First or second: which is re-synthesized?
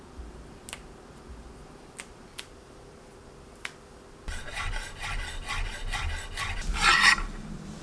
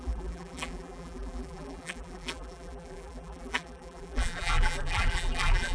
second